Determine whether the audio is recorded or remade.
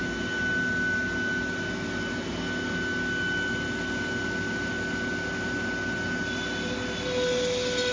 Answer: recorded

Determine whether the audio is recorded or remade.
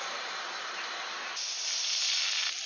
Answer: recorded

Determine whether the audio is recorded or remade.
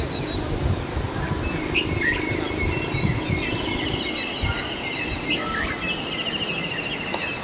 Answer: recorded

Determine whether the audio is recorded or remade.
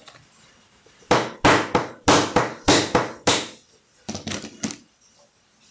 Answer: recorded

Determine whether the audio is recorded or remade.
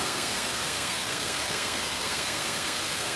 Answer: remade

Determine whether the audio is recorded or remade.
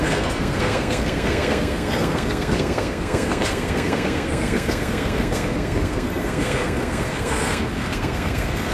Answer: remade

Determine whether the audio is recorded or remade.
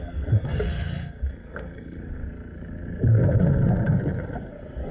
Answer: remade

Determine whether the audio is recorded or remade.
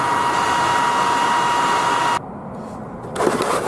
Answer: recorded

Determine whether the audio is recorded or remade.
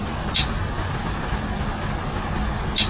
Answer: recorded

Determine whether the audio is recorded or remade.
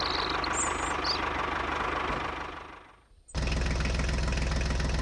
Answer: recorded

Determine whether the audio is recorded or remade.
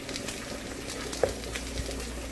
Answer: recorded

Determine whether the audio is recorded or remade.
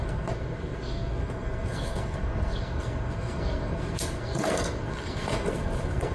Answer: remade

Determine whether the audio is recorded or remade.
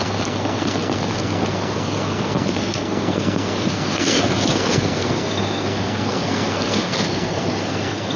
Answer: remade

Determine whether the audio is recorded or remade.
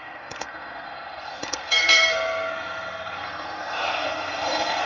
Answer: remade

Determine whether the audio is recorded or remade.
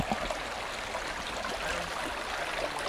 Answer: recorded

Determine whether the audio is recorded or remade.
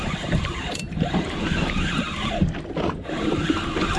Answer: recorded